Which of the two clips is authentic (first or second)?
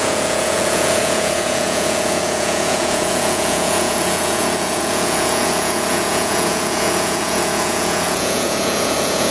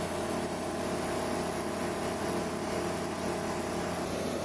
second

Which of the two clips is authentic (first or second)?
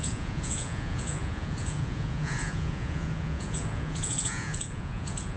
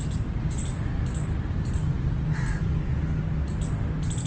second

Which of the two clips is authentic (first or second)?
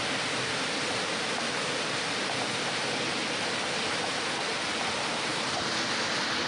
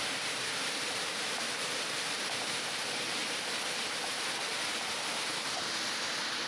first